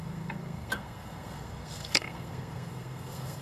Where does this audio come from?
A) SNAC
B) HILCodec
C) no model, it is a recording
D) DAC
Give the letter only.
A